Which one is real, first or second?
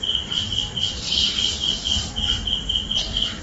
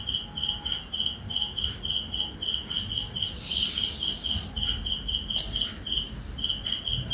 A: second